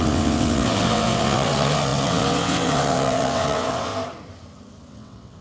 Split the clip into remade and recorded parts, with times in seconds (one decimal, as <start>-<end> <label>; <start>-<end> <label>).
0.0-3.9 remade; 3.9-4.9 recorded; 4.9-5.4 remade